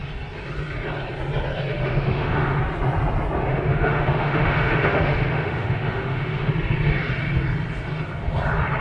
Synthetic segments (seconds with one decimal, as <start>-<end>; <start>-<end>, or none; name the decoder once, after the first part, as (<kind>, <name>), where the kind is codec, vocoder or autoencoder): 1.7-2.6 (autoencoder, DAC-VAE); 3.5-6.5